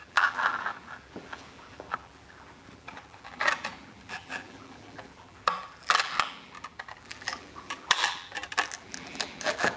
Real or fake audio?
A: fake